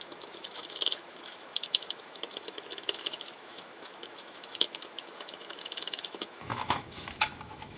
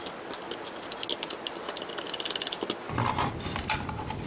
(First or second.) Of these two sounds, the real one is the second